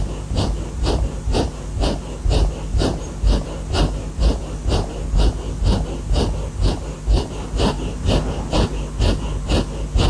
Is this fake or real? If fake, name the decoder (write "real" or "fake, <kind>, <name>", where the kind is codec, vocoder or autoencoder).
real